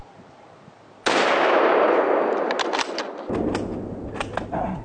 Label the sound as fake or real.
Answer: real